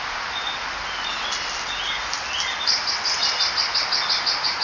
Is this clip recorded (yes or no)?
yes